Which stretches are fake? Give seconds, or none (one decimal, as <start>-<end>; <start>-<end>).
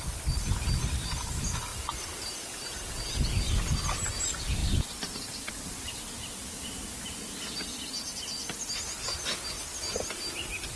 none